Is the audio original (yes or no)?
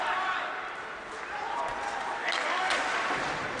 yes